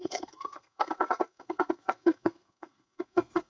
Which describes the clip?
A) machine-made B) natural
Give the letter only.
A